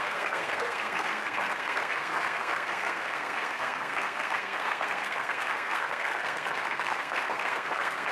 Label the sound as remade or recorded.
remade